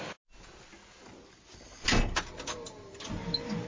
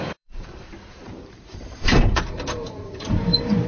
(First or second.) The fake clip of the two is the second